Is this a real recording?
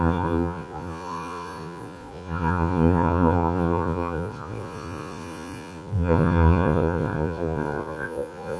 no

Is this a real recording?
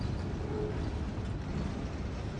yes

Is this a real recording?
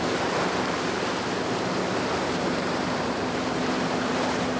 yes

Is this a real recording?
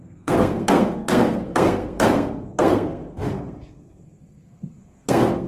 no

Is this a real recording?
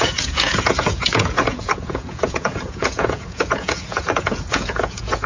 no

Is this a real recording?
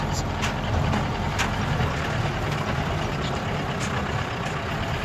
yes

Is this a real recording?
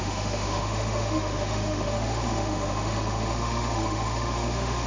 no